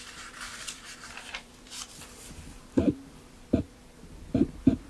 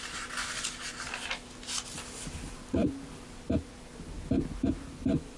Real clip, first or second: second